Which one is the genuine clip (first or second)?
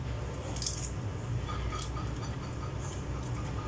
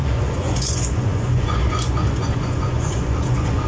first